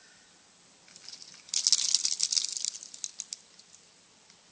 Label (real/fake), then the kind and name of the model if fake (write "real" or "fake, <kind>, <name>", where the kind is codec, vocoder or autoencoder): real